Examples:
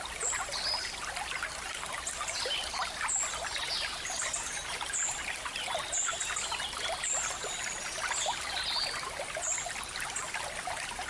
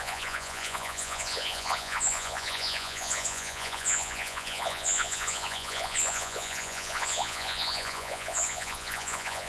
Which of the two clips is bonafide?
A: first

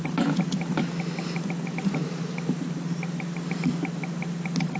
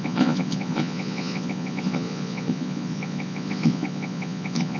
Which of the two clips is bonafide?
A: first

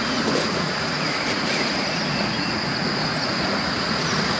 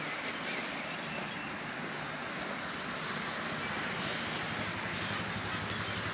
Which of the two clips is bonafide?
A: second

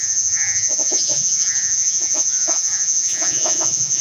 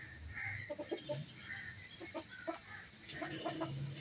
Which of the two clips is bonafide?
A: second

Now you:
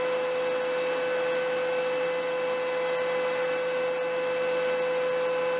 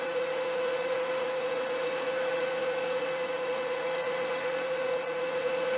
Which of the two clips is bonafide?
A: first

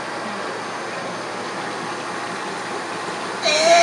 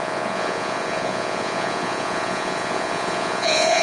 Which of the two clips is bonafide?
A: first